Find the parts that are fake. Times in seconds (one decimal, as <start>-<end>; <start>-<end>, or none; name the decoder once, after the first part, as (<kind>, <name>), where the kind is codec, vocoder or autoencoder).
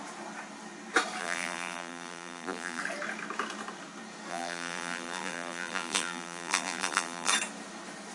1.2-2.8 (vocoder, BigVGAN v2); 4.3-7.3